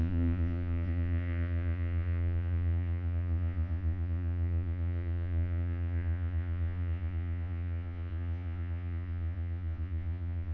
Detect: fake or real fake